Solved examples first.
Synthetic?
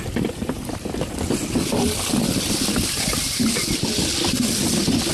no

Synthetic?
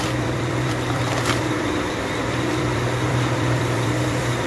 yes